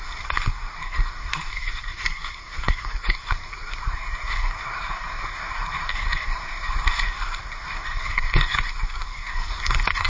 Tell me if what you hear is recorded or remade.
remade